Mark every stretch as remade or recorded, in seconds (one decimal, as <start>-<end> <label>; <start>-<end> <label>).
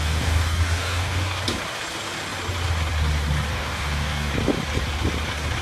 0.0-1.4 remade; 1.4-3.5 recorded; 3.5-4.3 remade; 4.3-5.6 recorded